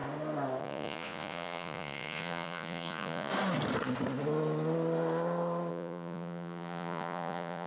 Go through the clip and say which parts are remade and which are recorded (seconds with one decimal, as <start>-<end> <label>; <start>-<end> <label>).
0.0-0.6 recorded; 0.6-3.3 remade; 3.3-5.7 recorded; 5.7-7.7 remade